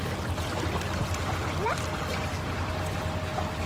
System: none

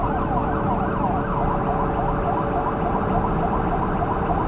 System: none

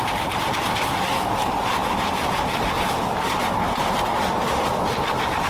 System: none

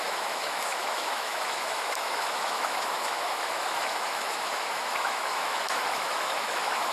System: autoencoder, DAC-VAE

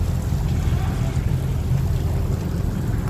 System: none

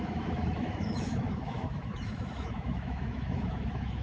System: autoencoder, DAC-VAE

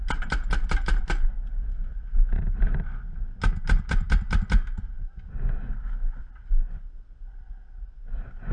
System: none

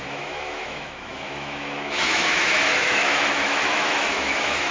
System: autoencoder, DAC-VAE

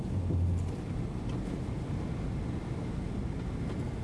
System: none